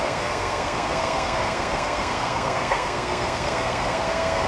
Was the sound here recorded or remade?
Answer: remade